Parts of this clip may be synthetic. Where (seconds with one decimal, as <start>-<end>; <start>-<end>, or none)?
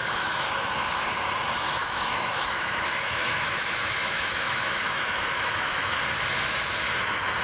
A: 0.0-0.7; 1.8-6.0